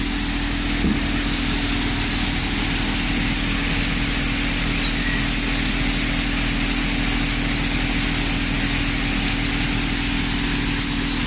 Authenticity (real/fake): real